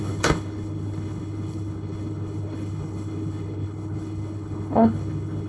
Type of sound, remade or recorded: remade